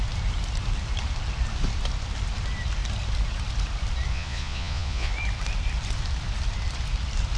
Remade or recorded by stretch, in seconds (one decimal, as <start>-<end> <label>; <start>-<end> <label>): 0.0-4.1 recorded; 4.1-5.1 remade; 5.1-7.4 recorded